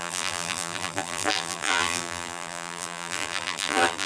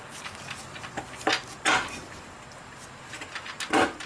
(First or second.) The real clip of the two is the second